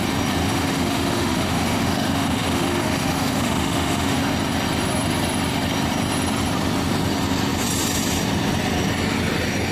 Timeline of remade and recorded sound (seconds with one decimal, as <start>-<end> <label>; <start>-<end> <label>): 0.0-0.4 recorded; 0.4-4.2 remade; 4.2-9.7 recorded